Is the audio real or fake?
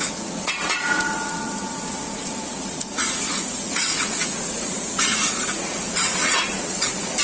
fake